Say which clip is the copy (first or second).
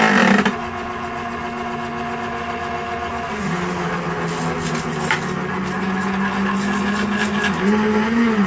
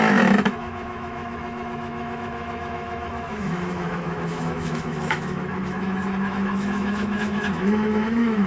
second